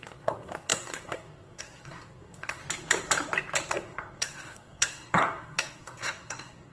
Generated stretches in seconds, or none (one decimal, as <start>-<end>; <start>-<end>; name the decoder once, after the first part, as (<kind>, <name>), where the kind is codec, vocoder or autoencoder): 0.0-2.6 (codec, SNAC); 3.7-6.7